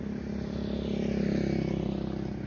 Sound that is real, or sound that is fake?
real